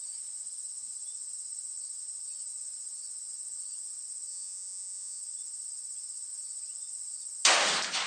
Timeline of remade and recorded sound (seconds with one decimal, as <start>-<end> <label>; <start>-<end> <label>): 0.0-4.3 recorded; 4.3-5.2 remade; 5.2-8.1 recorded